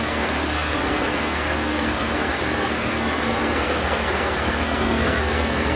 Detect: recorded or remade remade